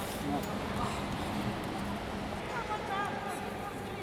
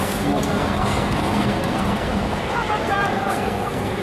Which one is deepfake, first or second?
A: second